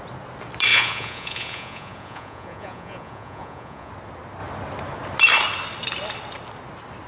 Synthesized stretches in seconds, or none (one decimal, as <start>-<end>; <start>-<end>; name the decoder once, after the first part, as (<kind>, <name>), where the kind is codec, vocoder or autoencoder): 0.7-3.9 (vocoder, Vocos)